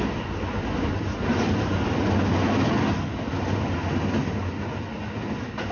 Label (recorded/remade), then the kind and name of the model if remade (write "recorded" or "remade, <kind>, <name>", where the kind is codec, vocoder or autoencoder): recorded